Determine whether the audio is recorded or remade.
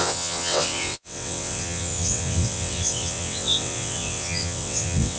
remade